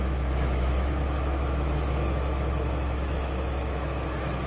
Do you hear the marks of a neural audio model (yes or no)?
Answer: yes